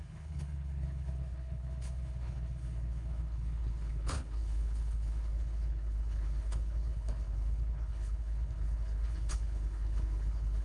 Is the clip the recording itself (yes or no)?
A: no